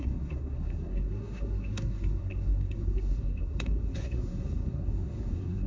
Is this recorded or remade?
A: remade